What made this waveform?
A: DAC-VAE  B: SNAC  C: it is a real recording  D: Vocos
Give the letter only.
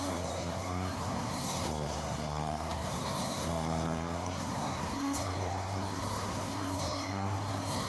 B